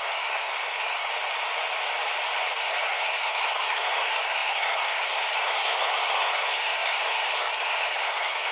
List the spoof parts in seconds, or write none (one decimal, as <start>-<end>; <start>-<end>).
0.0-1.1; 2.6-8.5